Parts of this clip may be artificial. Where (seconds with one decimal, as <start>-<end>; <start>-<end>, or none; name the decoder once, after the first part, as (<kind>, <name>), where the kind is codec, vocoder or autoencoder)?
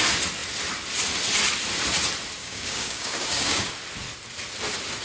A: 2.4-3.7 (codec, DAC)